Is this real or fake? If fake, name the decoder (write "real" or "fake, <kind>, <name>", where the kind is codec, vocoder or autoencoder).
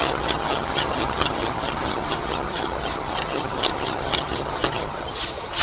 fake, vocoder, HiFi-GAN